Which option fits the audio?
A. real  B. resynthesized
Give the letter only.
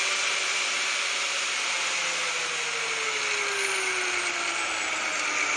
A